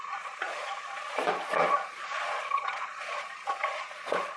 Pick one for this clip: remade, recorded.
remade